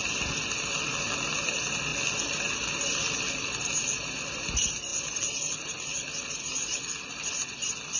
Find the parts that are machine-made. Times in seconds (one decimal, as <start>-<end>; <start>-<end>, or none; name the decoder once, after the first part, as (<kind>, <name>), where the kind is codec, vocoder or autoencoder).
none